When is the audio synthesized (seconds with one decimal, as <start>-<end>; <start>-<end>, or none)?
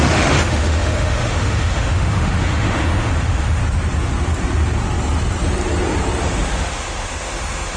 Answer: 0.0-3.6; 6.2-7.8